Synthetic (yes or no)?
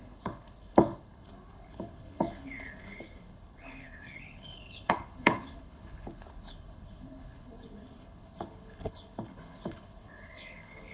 yes